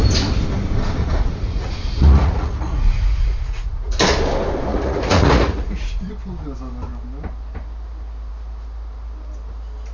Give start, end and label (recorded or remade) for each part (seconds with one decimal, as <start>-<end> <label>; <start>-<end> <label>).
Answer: 0.0-1.0 recorded; 1.0-4.0 remade; 4.0-4.7 recorded; 4.7-6.1 remade; 6.1-9.9 recorded